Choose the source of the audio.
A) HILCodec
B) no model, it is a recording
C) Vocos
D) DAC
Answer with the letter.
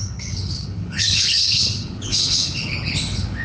A